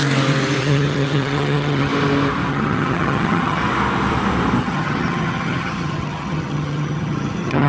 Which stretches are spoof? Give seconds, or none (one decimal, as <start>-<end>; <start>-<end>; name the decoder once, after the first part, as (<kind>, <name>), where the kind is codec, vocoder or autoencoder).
0.6-1.9 (vocoder, HiFi-GAN); 2.5-3.6; 4.6-7.7